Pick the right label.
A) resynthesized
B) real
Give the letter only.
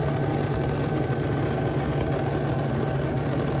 B